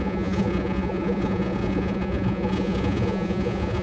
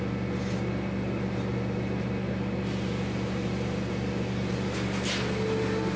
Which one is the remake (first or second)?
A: first